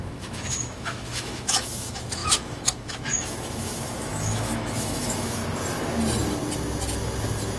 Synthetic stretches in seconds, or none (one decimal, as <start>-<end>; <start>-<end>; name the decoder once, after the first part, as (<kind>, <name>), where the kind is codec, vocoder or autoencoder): 0.0-5.4 (autoencoder, DAC-VAE)